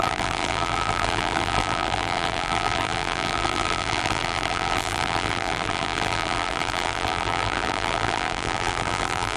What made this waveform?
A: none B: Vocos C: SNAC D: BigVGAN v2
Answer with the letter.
D